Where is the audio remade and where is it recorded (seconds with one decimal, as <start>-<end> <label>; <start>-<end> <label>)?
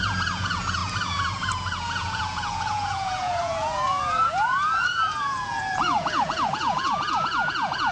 0.0-7.9 remade